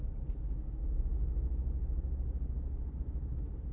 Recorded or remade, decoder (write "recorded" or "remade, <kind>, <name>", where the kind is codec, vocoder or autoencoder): recorded